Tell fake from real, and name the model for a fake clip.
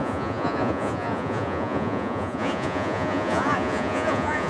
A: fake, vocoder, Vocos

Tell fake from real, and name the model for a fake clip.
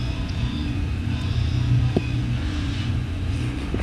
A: fake, vocoder, Vocos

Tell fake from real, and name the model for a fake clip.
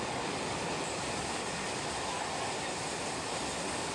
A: real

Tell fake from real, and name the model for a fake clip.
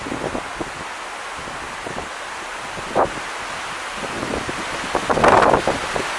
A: real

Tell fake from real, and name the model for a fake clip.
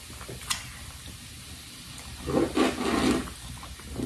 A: real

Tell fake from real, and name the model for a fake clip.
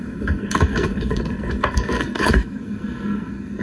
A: fake, codec, SNAC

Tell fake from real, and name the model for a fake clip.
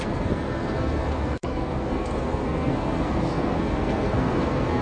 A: fake, codec, SNAC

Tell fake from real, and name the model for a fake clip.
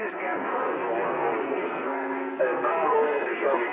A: fake, codec, SNAC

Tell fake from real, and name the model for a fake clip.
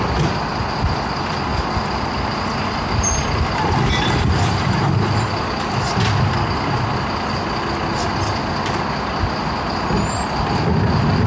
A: real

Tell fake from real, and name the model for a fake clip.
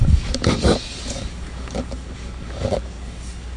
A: fake, codec, DAC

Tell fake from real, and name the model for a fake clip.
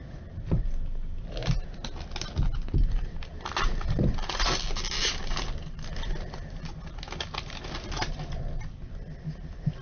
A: real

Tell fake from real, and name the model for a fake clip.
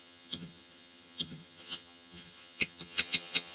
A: fake, vocoder, HiFi-GAN